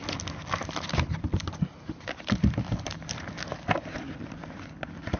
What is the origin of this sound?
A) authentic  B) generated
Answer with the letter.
A